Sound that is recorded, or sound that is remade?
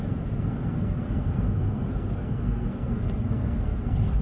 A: remade